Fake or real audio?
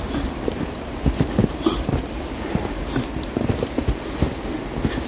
fake